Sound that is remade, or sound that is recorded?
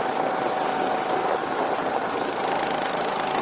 recorded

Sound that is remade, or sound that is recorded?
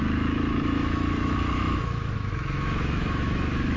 remade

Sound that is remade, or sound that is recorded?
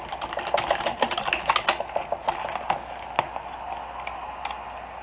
recorded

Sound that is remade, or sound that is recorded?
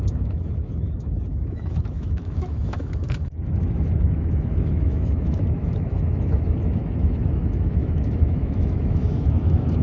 remade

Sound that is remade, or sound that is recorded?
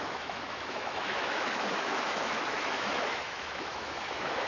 remade